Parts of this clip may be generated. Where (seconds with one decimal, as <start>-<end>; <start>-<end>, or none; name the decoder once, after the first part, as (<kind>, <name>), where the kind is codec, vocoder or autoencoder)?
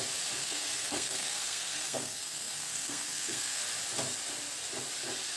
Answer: 0.4-3.6 (codec, SNAC)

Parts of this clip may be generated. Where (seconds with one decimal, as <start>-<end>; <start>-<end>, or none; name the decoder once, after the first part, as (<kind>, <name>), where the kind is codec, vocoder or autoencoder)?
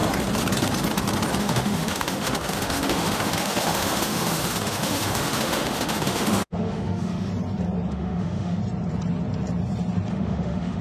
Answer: 1.4-7.3 (autoencoder, DAC-VAE); 7.9-8.6; 10.1-10.8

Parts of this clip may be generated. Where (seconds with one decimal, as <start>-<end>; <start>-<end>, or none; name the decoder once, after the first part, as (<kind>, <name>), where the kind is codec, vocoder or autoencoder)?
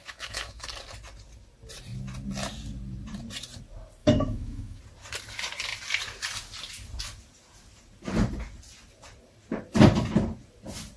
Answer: 0.0-0.7 (autoencoder, DAC-VAE); 4.0-4.8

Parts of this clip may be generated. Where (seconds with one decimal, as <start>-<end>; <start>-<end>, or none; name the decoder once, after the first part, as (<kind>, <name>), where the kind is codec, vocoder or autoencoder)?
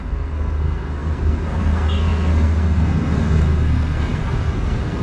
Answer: 0.0-5.0 (codec, SNAC)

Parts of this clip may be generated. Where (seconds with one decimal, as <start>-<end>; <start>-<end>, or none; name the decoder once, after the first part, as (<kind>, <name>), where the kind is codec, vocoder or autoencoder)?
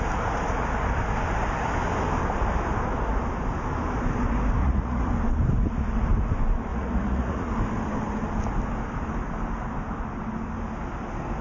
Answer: 4.6-5.1 (vocoder, Vocos); 6.7-7.5